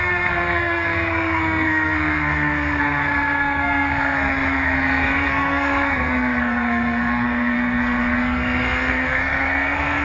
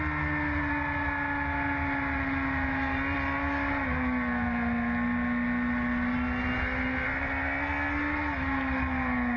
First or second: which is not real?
first